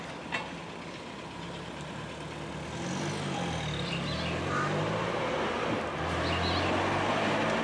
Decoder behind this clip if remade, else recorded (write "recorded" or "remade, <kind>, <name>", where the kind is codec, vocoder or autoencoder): recorded